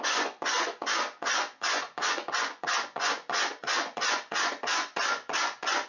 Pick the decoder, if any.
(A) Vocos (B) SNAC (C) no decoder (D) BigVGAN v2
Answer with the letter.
A